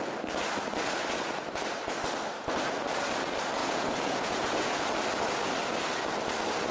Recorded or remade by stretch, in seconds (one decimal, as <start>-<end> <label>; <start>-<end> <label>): 0.0-3.6 recorded; 3.6-4.8 remade; 4.8-6.7 recorded

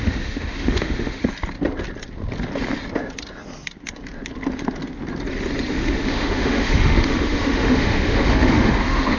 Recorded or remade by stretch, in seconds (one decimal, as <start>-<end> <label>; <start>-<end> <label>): 0.0-1.2 remade; 1.2-5.7 recorded; 5.7-9.2 remade